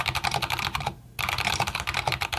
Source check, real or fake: real